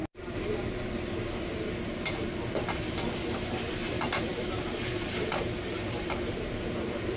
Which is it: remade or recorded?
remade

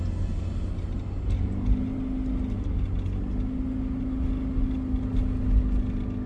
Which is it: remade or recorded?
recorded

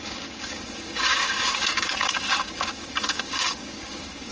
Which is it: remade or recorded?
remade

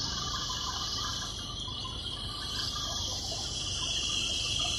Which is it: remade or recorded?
recorded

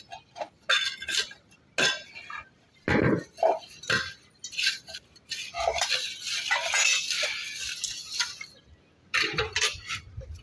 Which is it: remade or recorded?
recorded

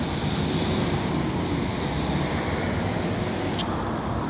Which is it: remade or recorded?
recorded